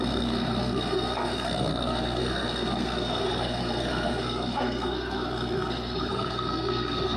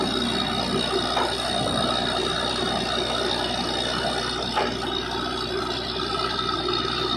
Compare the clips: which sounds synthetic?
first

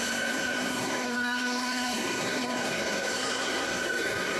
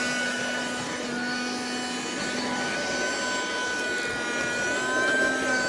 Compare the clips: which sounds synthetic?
first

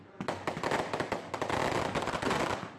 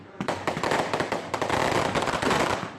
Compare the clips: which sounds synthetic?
second